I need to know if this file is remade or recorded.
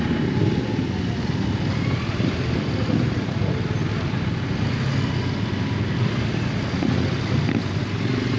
recorded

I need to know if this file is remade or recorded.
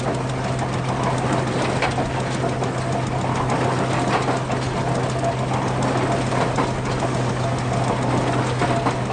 recorded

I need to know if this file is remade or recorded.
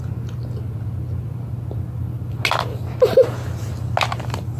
recorded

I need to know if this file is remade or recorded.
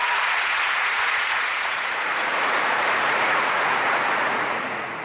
remade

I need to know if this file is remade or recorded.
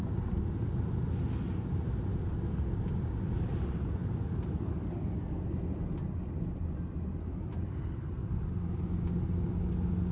recorded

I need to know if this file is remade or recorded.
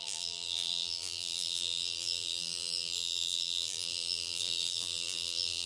remade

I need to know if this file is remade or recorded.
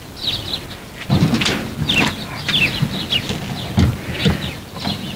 recorded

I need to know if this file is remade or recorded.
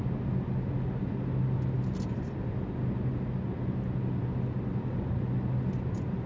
recorded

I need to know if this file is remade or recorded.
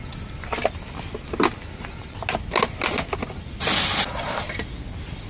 recorded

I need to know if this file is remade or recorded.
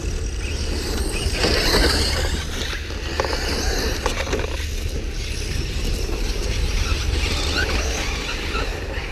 recorded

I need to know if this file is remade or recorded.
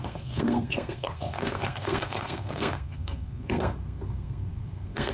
remade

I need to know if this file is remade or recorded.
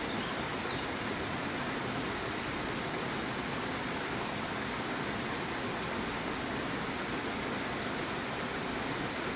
recorded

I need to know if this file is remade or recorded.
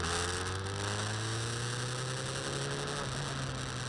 recorded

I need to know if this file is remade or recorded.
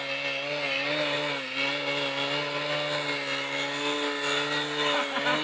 recorded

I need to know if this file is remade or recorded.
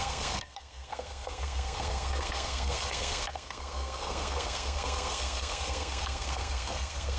remade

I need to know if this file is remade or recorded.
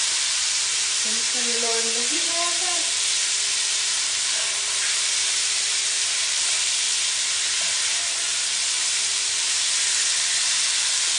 remade